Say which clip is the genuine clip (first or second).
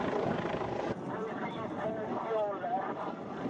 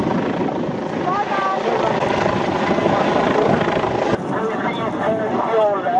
second